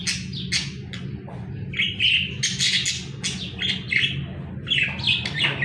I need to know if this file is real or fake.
real